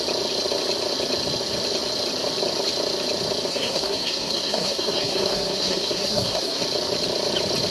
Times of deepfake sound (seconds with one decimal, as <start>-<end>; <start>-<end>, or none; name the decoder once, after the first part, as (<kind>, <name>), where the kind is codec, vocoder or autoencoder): 3.5-6.6 (codec, SNAC)